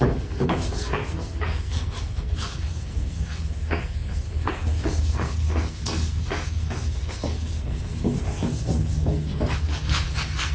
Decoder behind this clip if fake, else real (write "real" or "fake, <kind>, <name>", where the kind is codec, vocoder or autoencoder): fake, codec, SNAC